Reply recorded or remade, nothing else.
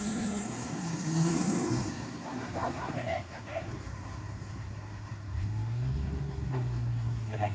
remade